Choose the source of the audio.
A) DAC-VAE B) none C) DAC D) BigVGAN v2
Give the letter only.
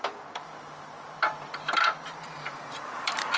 D